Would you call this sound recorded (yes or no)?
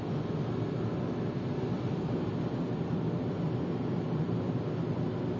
yes